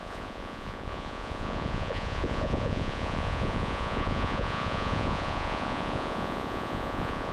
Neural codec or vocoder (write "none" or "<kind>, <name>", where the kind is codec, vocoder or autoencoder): vocoder, Vocos